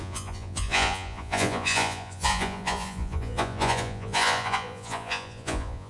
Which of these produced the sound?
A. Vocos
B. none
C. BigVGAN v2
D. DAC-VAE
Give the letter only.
A